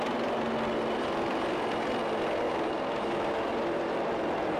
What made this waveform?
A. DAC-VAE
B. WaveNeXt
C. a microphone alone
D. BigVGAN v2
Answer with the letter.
C